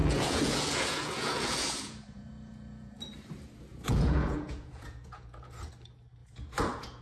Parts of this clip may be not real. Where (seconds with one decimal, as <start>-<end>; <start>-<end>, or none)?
0.0-3.0; 3.7-5.7; 6.2-7.0